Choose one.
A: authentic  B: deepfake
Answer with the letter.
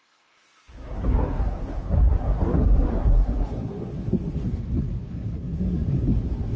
B